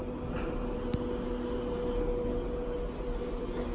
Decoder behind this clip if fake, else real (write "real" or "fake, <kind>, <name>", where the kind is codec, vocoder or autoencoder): real